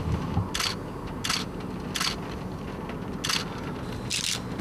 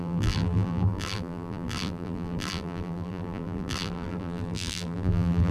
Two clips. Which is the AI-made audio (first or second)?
second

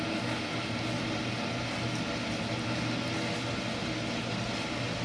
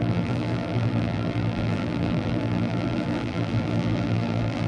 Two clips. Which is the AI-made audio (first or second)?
second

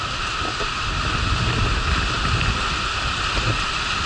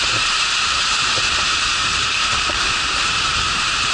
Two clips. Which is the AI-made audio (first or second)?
second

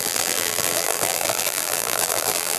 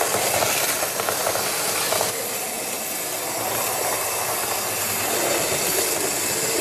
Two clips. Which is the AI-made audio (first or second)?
first